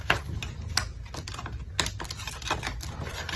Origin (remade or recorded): recorded